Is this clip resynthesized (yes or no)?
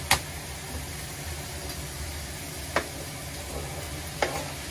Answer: no